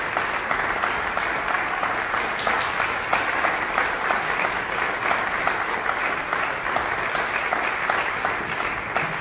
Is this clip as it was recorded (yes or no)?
yes